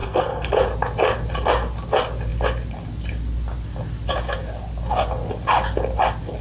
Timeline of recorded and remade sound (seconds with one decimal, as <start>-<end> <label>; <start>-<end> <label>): 0.0-0.5 remade; 0.5-6.4 recorded